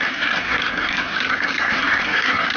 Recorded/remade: remade